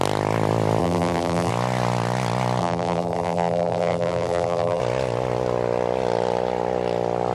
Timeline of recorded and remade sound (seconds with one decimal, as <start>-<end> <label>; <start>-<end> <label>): 0.0-0.8 recorded; 0.8-1.5 remade; 1.5-2.6 recorded; 2.6-4.8 remade; 4.8-7.3 recorded